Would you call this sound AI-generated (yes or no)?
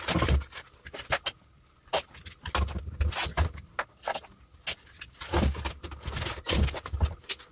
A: no